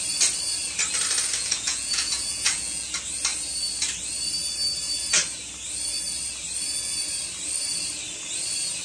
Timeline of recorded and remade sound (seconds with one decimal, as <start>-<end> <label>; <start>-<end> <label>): 0.0-1.4 recorded; 1.4-2.9 remade; 2.9-8.8 recorded